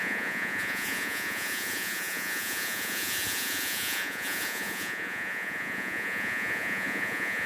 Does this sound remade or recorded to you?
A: remade